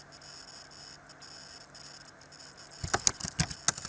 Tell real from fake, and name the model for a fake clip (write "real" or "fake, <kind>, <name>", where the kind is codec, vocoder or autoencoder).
real